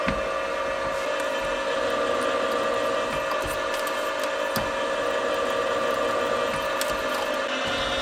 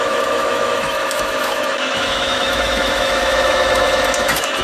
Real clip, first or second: first